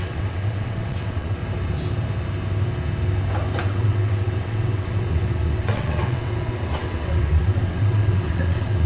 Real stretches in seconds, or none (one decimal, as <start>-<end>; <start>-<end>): 1.4-3.6